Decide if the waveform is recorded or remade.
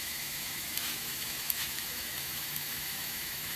remade